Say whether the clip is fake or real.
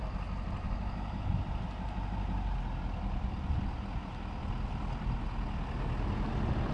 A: real